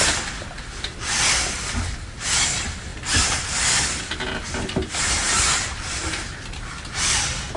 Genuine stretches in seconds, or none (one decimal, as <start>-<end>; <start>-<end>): 0.0-7.6